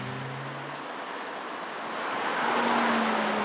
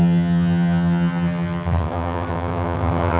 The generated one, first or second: second